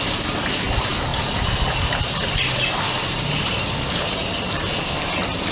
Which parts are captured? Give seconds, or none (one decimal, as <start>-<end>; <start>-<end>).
0.0-5.5